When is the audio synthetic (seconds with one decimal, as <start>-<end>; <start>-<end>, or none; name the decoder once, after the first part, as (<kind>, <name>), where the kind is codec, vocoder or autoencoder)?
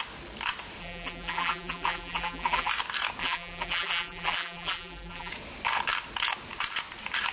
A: 0.8-2.7 (vocoder, BigVGAN v2); 3.2-5.3